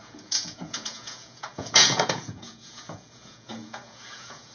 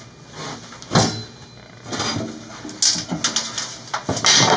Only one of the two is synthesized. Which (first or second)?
first